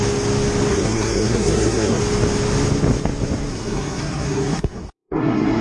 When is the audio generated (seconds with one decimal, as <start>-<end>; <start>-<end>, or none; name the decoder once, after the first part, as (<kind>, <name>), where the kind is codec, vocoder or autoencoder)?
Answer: 0.7-2.0 (codec, SNAC); 3.5-5.6